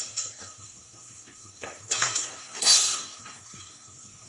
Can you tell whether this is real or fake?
fake